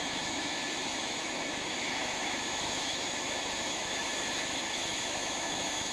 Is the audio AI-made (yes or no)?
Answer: yes